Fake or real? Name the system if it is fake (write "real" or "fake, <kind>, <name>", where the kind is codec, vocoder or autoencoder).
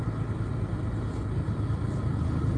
real